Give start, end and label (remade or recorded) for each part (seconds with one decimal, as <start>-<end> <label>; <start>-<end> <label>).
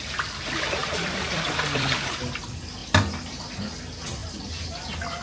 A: 0.0-0.8 recorded; 0.8-2.4 remade; 2.4-2.8 recorded; 2.8-3.6 remade; 3.6-5.2 recorded